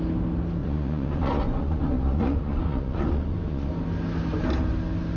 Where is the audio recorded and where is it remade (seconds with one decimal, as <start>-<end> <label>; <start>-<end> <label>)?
0.0-0.6 recorded; 0.6-3.7 remade; 3.7-5.2 recorded

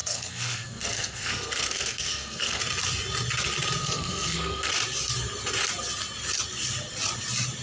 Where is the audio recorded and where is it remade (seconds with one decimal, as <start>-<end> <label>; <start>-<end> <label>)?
0.0-2.6 remade; 2.6-3.8 recorded; 3.8-4.7 remade; 4.7-7.6 recorded